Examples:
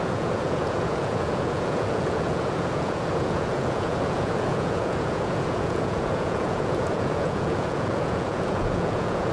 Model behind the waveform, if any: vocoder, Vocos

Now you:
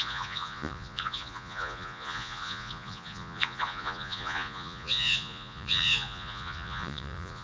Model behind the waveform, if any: vocoder, Vocos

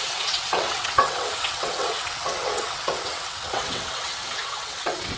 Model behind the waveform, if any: vocoder, WaveNeXt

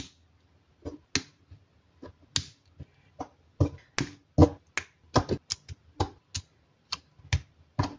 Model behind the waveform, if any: none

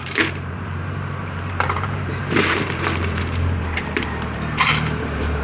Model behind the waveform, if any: vocoder, BigVGAN v2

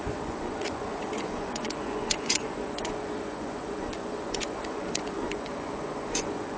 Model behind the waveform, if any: vocoder, Vocos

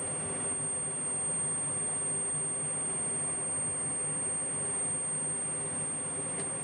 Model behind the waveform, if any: none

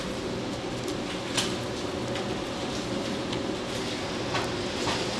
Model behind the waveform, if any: none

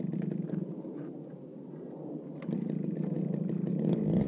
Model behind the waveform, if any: none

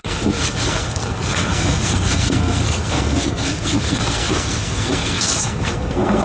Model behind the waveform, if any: codec, SNAC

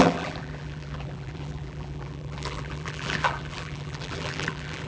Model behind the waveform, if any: vocoder, BigVGAN v2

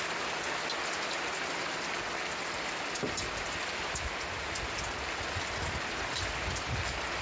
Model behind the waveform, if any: none